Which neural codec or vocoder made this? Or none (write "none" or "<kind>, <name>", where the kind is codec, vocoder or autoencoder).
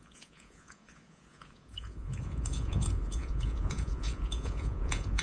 vocoder, Vocos